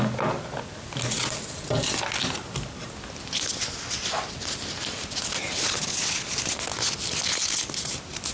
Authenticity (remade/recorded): recorded